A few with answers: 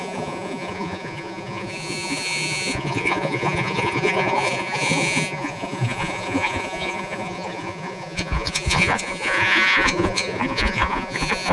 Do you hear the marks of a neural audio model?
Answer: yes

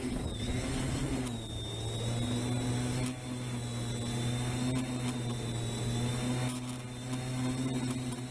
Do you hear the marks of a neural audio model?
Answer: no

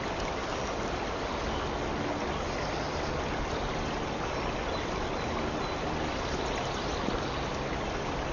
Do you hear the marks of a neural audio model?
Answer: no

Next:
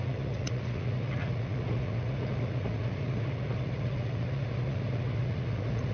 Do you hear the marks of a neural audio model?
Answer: yes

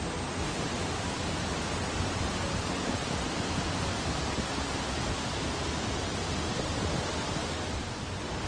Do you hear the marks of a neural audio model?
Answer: no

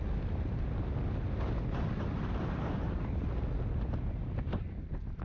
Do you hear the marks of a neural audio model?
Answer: no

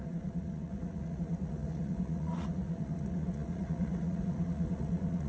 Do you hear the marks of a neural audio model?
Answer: yes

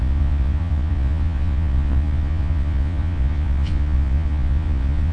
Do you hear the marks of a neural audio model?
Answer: yes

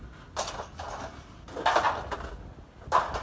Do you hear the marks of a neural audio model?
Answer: no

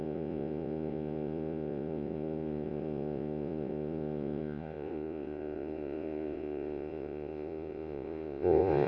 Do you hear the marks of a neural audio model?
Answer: yes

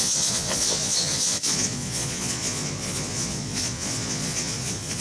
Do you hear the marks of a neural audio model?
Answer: yes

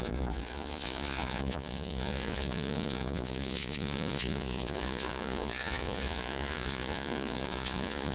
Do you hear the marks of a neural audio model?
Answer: yes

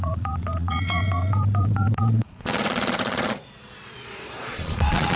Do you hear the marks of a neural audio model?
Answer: yes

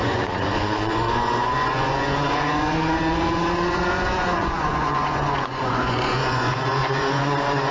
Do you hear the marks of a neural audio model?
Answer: yes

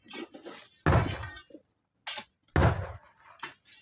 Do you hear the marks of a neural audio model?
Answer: no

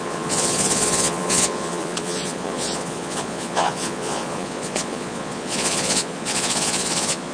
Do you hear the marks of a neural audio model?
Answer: yes